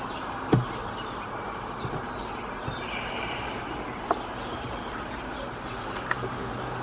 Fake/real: real